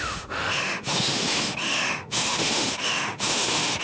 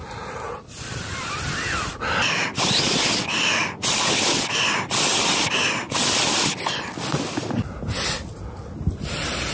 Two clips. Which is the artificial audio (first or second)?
first